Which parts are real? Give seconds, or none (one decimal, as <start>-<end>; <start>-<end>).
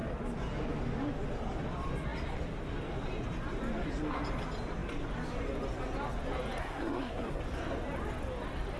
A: 0.0-6.6; 7.4-8.8